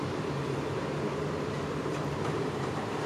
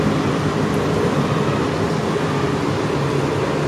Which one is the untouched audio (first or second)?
second